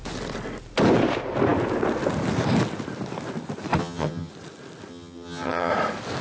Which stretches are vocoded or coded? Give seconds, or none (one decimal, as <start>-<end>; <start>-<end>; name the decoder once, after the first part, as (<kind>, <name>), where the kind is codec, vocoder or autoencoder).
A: 3.8-4.3 (vocoder, HiFi-GAN); 4.9-5.7